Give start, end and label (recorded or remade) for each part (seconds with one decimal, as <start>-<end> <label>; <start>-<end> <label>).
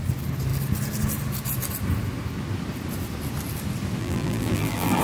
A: 0.0-4.0 recorded; 4.0-5.0 remade